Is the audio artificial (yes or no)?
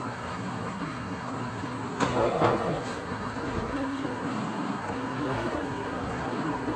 yes